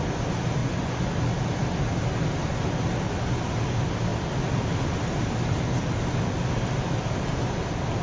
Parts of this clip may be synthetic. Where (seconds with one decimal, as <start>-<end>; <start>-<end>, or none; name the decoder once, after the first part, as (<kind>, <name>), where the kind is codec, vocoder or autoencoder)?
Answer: 0.6-1.1 (vocoder, Vocos)